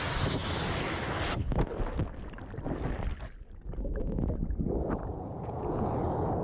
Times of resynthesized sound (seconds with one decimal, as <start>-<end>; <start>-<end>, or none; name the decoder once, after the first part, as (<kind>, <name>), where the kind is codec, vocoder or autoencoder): 5.1-5.9 (vocoder, Vocos)